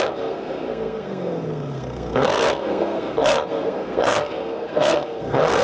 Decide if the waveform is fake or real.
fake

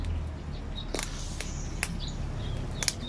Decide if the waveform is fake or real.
real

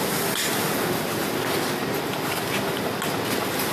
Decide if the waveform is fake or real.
real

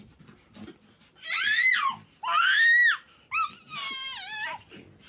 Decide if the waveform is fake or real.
real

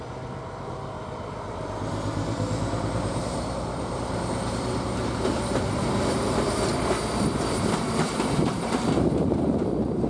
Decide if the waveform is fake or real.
fake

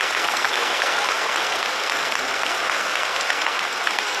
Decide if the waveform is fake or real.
fake